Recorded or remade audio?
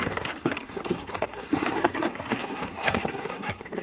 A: remade